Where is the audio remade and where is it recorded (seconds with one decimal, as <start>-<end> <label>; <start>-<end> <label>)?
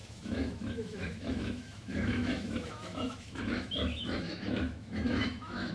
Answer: 0.0-5.7 remade